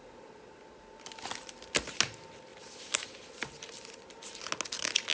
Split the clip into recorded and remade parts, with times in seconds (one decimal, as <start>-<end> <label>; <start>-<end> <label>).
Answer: 0.0-2.5 recorded; 2.5-4.2 remade; 4.2-5.1 recorded